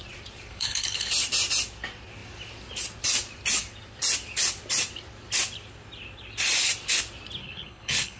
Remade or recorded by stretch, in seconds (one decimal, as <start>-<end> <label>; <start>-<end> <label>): 0.0-0.5 recorded; 0.5-1.1 remade; 1.1-7.4 recorded; 7.4-8.2 remade